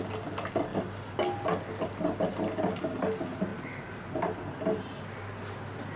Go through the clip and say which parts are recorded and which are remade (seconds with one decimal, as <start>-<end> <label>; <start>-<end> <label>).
0.0-6.0 recorded